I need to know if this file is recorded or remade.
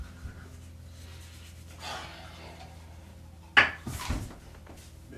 recorded